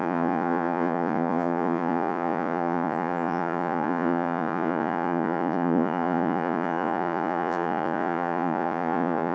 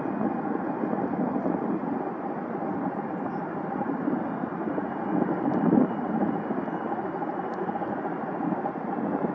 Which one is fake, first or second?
first